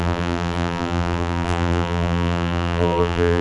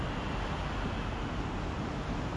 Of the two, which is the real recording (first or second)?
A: second